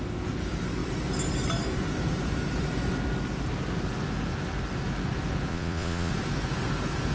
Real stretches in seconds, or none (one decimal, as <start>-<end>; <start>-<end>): 0.0-5.5; 6.1-7.1